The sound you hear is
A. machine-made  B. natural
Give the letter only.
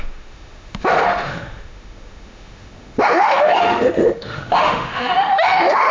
A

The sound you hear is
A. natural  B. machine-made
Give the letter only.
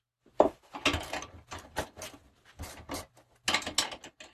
A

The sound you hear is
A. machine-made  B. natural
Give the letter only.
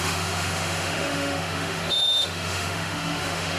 A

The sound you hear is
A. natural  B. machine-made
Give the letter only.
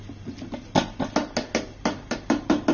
A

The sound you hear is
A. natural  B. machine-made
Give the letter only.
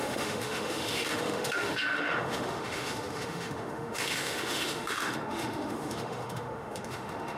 B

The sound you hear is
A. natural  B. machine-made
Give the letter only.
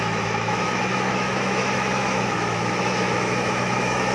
B